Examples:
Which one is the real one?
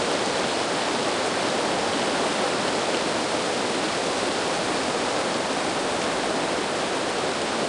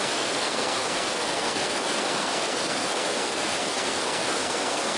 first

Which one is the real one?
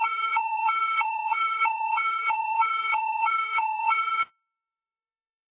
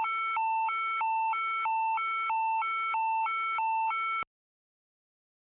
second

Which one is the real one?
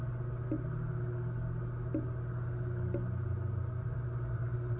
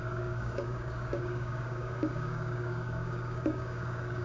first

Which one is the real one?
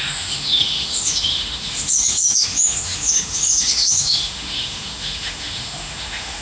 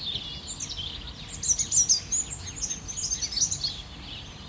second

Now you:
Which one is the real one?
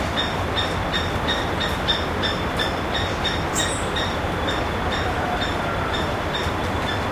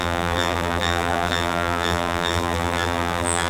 first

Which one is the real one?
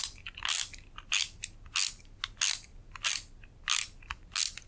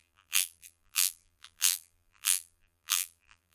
first